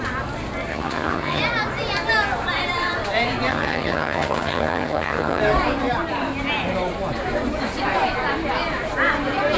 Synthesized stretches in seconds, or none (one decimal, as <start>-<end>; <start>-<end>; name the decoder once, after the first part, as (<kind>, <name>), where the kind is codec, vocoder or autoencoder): 0.7-1.4 (vocoder, HiFi-GAN); 3.5-5.4

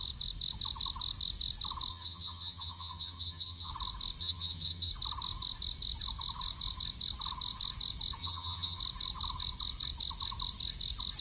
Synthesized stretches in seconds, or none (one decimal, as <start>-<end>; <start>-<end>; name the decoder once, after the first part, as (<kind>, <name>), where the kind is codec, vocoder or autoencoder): 1.9-3.7 (vocoder, HiFi-GAN); 4.2-4.9; 8.2-8.8

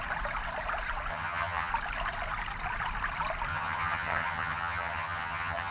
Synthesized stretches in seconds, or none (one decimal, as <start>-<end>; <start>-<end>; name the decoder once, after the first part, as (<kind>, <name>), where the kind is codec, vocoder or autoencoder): 1.1-1.7 (vocoder, HiFi-GAN); 3.5-5.7

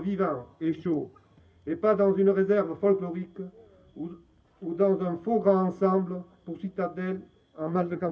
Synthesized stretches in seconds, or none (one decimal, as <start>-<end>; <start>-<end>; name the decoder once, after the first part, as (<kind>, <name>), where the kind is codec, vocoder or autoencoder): 0.5-1.4 (vocoder, HiFi-GAN); 7.4-8.1

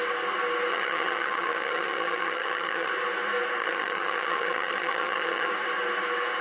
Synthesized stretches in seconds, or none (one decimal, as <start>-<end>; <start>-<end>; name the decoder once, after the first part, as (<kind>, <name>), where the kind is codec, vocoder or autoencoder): 0.7-2.9 (vocoder, HiFi-GAN); 3.6-5.5